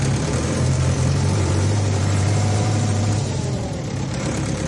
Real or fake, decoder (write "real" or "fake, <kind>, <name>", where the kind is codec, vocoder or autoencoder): fake, vocoder, BigVGAN v2